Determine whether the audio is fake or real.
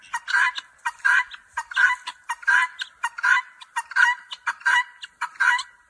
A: real